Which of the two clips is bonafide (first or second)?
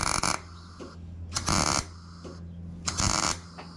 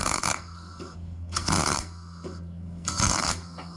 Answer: first